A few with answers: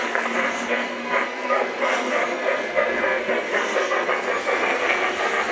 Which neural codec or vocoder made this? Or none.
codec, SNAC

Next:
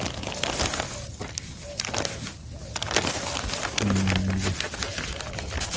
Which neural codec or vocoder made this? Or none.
none